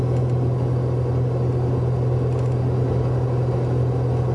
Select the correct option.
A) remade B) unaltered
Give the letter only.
B